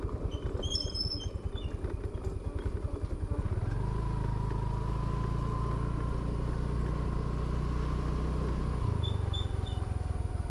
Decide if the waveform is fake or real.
real